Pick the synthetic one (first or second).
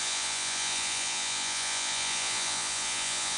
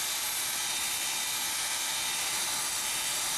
first